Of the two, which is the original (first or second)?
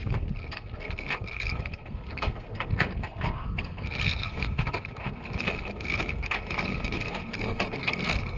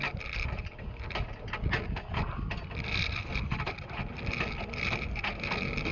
second